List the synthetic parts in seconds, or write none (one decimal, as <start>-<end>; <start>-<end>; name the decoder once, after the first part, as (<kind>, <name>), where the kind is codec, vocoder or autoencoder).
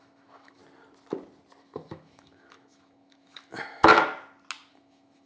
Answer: 0.0-0.6 (autoencoder, DAC-VAE); 1.6-3.9; 4.7-5.3